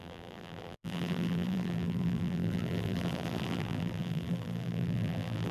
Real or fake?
fake